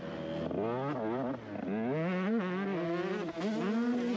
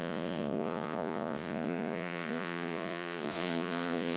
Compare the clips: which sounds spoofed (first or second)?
second